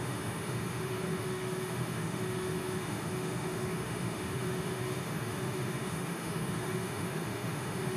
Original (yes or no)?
no